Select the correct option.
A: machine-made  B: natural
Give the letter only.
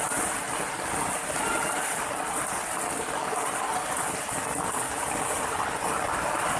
B